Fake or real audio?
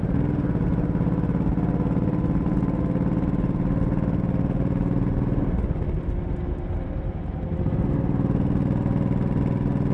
real